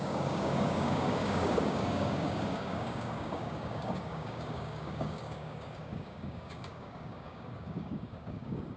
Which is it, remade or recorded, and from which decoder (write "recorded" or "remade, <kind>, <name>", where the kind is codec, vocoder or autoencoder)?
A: remade, codec, DAC